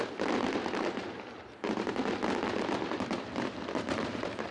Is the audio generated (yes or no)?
no